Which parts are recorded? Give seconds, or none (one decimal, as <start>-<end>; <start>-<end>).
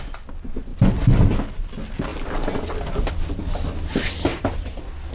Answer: 0.0-5.1